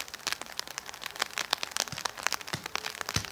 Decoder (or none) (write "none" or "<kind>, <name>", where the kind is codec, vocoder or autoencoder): none